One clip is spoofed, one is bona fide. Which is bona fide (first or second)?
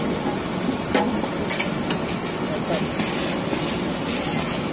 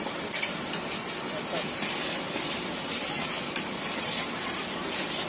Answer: first